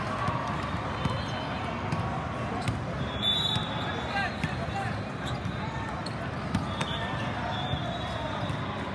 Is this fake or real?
real